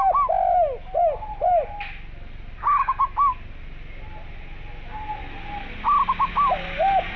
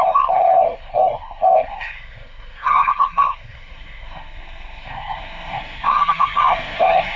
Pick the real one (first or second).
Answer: first